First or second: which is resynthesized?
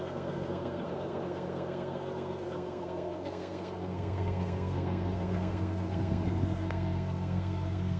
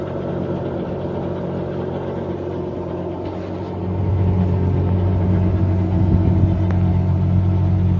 first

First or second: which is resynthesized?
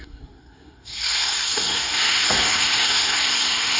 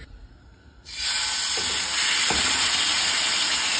first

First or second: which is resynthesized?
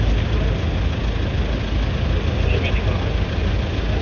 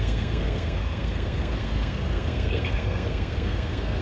second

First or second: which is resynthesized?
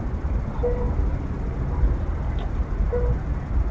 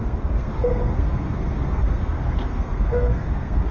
second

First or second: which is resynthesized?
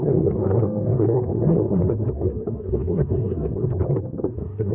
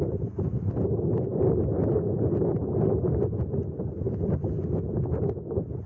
first